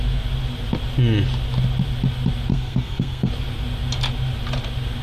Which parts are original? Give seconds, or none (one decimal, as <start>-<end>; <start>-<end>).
0.0-2.5; 3.3-5.0